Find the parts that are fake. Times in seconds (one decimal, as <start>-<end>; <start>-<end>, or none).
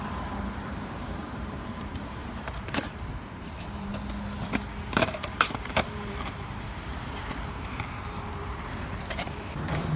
0.0-3.9; 4.8-10.0